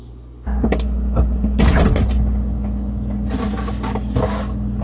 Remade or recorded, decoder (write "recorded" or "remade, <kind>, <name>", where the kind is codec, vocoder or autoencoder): recorded